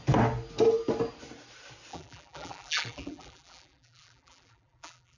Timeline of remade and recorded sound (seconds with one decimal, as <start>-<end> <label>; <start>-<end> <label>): 0.0-1.9 recorded; 1.9-5.2 remade